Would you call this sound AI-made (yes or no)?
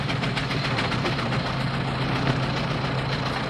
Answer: no